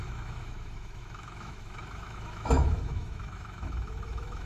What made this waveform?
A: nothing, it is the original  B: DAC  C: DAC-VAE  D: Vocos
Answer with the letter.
C